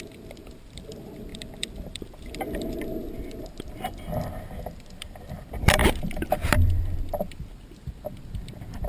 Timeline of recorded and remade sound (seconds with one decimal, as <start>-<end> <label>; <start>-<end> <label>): 0.0-8.9 remade